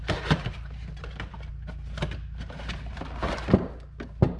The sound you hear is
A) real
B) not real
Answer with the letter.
A